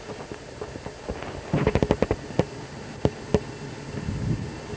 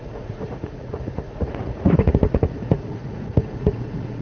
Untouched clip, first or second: first